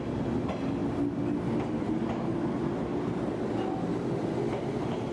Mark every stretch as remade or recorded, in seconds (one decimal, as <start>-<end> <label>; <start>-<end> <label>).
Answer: 0.0-5.1 recorded

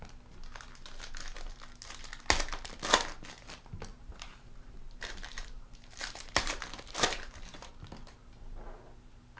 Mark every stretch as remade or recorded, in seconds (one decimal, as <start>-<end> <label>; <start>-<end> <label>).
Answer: 0.0-3.9 recorded; 3.9-7.7 remade; 7.7-9.4 recorded

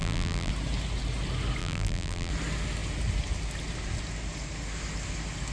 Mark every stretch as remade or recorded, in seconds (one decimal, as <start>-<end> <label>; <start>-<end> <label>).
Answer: 0.0-0.5 remade; 0.5-1.6 recorded; 1.6-2.3 remade; 2.3-5.5 recorded